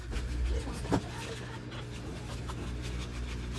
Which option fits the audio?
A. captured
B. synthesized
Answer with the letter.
A